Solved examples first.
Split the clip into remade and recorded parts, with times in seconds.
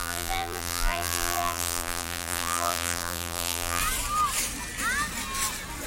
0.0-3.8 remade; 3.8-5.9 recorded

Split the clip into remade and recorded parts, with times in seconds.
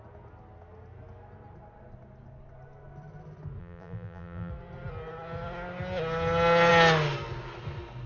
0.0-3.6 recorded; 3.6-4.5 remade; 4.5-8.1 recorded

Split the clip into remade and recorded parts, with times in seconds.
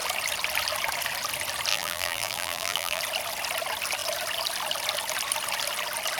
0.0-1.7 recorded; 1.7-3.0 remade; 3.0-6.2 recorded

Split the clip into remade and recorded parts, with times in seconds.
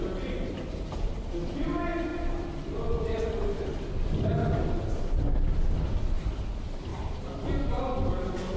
0.0-2.1 recorded; 2.1-5.7 remade; 5.7-6.9 recorded; 6.9-7.8 remade; 7.8-8.6 recorded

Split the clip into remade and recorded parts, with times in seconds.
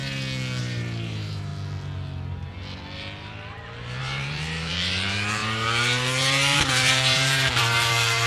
0.0-0.6 recorded; 0.6-1.5 remade; 1.5-4.0 recorded; 4.0-8.3 remade